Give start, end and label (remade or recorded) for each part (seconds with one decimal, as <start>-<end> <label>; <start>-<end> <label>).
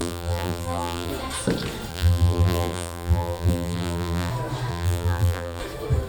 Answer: 0.0-1.1 remade; 1.1-1.9 recorded; 1.9-4.3 remade; 4.3-4.7 recorded; 4.7-5.6 remade; 5.6-6.1 recorded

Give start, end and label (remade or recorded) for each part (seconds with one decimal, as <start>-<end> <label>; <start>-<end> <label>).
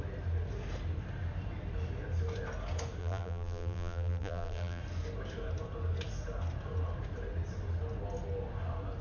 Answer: 0.0-3.0 recorded; 3.0-4.8 remade; 4.8-9.0 recorded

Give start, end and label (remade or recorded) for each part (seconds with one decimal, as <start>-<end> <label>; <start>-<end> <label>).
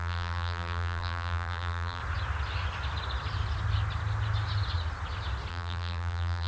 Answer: 0.0-2.0 remade; 2.0-5.5 recorded; 5.5-6.5 remade